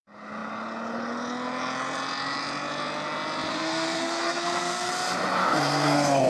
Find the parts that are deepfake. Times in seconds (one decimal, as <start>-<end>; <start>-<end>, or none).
3.5-4.9; 5.4-6.3